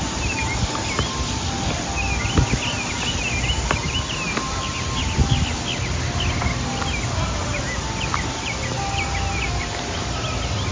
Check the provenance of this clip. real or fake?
real